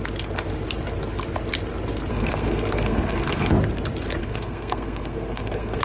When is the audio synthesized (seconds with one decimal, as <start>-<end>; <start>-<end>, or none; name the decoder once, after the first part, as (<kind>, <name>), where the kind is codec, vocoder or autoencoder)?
2.1-3.5 (codec, SNAC); 4.2-5.8